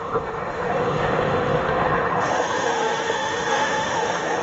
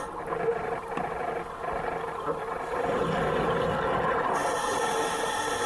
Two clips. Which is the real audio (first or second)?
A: second